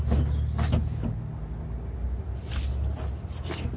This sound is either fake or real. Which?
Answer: real